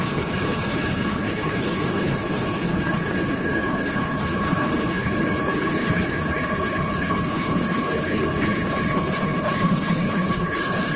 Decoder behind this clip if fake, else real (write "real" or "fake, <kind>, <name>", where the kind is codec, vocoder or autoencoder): fake, codec, HILCodec